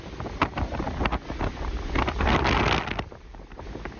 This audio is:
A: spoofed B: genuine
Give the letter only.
B